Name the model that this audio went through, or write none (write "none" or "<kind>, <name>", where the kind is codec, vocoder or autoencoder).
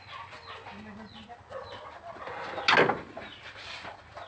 none